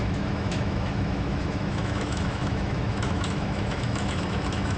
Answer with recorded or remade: remade